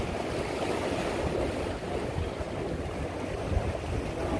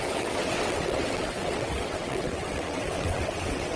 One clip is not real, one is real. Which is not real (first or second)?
second